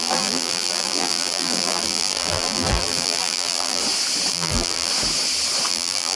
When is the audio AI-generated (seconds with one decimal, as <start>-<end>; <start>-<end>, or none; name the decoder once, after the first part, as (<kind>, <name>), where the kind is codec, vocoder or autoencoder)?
0.0-3.8 (vocoder, BigVGAN v2); 4.3-4.9; 5.7-6.2